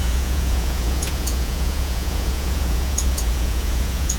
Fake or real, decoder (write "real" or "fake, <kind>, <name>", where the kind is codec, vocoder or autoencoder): fake, vocoder, Vocos